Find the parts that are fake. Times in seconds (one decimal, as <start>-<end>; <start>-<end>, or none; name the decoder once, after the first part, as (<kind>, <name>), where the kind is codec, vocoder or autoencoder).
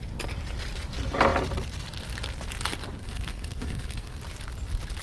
3.0-4.2 (codec, SNAC)